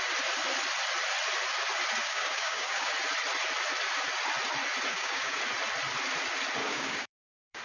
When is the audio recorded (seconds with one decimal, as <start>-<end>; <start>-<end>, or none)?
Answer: 0.0-2.0; 2.9-4.9; 5.4-6.6